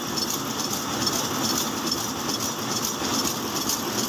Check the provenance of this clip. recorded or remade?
recorded